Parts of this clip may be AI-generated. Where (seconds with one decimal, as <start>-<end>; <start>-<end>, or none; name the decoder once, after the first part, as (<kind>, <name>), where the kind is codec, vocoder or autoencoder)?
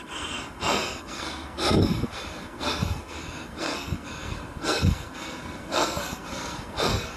0.0-7.2 (codec, SNAC)